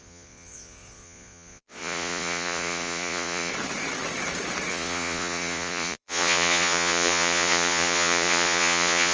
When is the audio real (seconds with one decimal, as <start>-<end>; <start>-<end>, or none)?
3.5-4.7